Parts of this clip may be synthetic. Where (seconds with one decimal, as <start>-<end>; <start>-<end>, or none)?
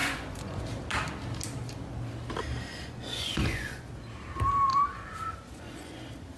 0.0-0.6; 2.7-3.9; 4.7-6.0